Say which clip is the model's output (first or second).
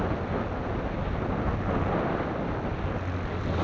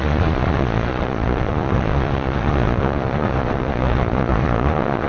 second